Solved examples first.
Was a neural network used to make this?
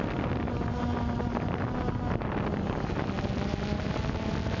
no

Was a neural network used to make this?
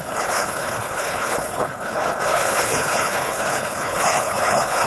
yes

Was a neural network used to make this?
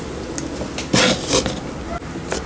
no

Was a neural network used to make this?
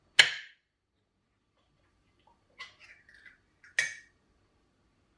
no